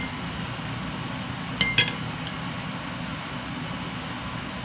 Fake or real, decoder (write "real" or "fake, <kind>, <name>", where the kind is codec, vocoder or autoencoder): real